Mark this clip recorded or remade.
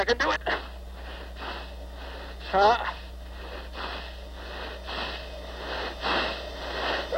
recorded